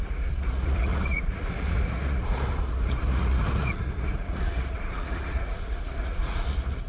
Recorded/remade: remade